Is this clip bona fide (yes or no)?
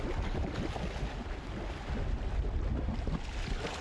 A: yes